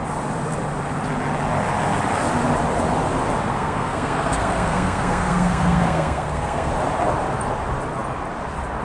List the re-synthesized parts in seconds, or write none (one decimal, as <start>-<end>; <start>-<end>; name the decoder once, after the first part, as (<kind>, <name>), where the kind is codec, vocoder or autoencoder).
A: 3.5-6.7 (codec, SNAC)